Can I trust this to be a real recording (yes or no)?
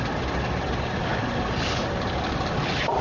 no